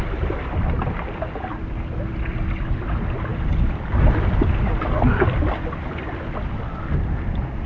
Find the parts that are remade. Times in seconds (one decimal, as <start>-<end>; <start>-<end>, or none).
none